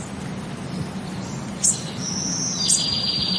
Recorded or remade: recorded